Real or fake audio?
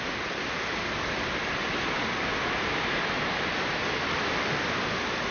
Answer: real